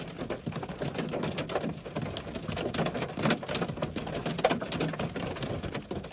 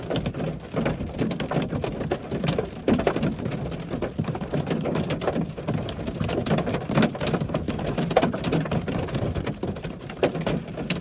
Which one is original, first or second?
first